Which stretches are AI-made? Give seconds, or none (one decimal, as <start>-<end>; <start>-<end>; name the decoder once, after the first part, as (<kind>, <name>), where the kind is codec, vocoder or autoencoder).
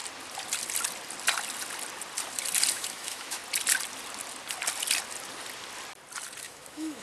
2.7-3.4 (autoencoder, DAC-VAE); 6.4-7.0